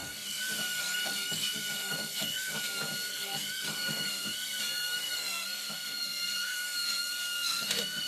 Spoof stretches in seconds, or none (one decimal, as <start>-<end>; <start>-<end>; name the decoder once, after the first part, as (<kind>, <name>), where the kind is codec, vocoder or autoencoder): 0.0-2.6 (codec, SNAC); 3.1-8.1